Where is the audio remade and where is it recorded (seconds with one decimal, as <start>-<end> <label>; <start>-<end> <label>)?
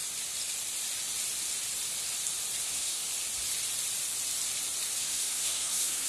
0.0-2.6 recorded; 2.6-3.0 remade; 3.0-5.0 recorded; 5.0-6.1 remade